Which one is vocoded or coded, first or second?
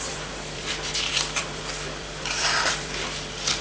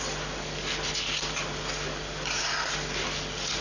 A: first